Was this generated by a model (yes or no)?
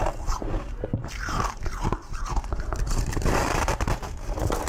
yes